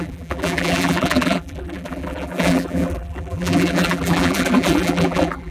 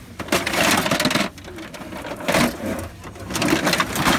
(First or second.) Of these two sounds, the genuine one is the second